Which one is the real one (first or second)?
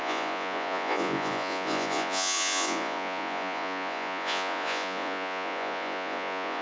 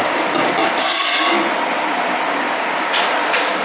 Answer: second